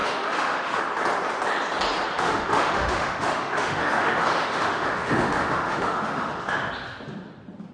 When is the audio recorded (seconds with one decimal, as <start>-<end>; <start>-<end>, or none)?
0.8-2.1; 6.7-7.7